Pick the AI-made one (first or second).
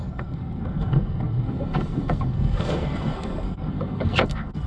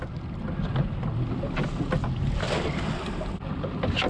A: first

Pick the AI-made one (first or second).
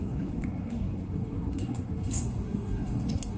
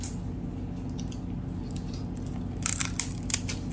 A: first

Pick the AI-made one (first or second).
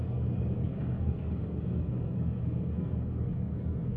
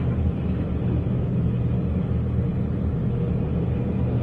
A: first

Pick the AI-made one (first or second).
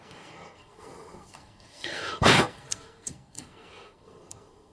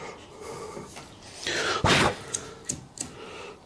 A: first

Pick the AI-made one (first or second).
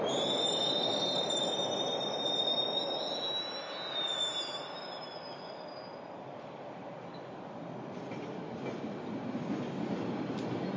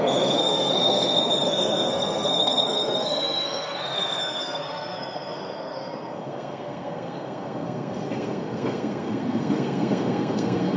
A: second